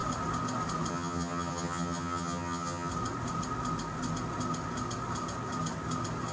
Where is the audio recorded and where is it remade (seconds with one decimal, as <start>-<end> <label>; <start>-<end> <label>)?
0.0-0.9 recorded; 0.9-2.9 remade; 2.9-6.3 recorded